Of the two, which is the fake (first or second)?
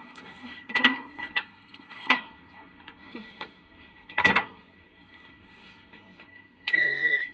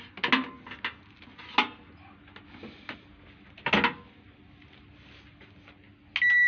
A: first